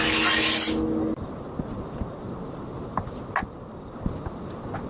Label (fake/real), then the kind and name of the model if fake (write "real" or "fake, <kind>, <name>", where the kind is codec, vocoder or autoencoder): real